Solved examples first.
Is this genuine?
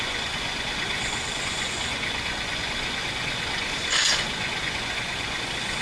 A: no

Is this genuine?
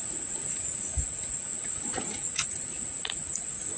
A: no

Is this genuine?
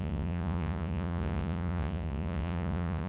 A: no